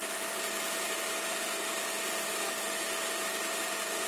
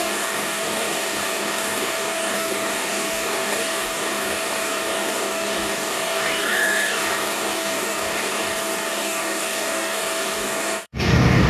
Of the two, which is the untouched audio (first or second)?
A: first